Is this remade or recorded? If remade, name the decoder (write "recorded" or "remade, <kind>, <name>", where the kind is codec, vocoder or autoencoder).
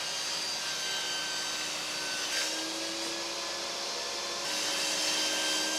recorded